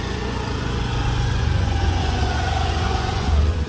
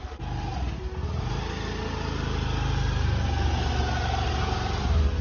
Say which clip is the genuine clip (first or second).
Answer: second